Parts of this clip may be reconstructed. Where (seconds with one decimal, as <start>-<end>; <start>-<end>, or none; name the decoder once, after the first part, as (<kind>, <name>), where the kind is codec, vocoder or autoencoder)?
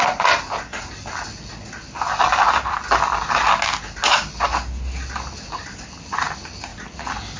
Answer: none